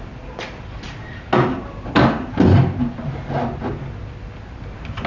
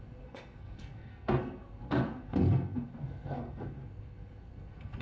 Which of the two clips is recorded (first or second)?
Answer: first